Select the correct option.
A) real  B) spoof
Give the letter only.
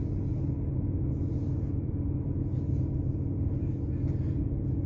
A